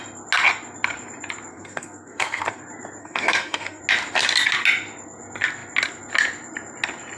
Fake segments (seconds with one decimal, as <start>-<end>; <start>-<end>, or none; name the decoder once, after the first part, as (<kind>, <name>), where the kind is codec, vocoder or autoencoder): 1.5-2.6 (codec, SNAC); 3.0-3.8